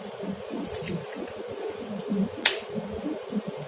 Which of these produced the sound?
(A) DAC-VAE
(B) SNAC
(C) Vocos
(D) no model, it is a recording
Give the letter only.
C